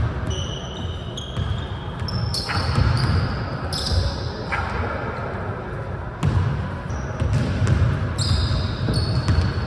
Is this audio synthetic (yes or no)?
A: no